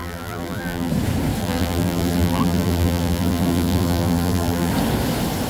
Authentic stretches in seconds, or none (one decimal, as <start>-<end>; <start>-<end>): 0.9-1.4; 4.7-5.5